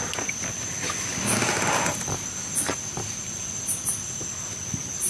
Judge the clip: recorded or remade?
recorded